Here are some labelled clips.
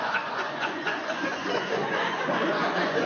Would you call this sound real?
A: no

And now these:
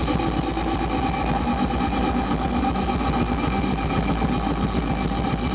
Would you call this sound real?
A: yes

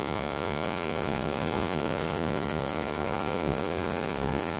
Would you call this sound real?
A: no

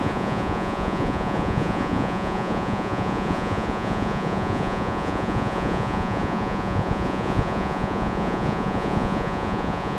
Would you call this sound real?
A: no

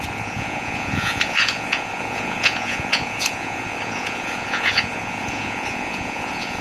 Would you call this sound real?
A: no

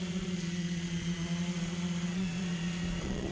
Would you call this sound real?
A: no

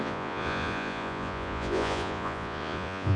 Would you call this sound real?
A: no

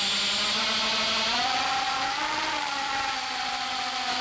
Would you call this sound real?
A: yes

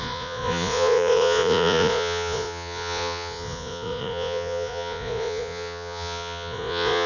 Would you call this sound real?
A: no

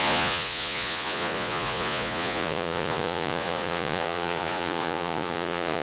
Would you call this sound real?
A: no